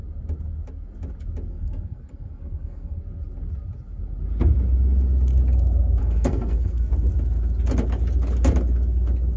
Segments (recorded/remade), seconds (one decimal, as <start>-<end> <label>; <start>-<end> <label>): 0.0-1.5 recorded; 1.5-3.0 remade; 3.0-6.0 recorded; 6.0-6.9 remade; 6.9-9.4 recorded